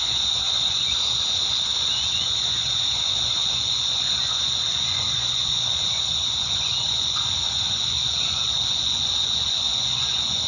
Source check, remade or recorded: remade